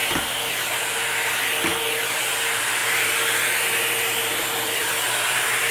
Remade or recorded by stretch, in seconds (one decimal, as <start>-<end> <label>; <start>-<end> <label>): 0.0-2.8 recorded; 2.8-3.4 remade; 3.4-4.2 recorded; 4.2-4.9 remade; 4.9-5.7 recorded

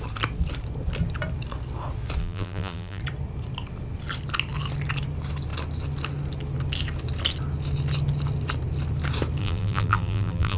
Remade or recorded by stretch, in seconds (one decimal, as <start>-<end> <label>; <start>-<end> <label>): 0.0-2.2 recorded; 2.2-3.0 remade; 3.0-9.4 recorded; 9.4-10.6 remade